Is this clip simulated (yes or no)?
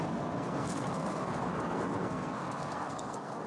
yes